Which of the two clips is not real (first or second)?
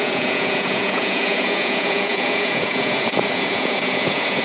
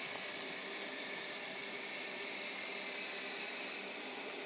first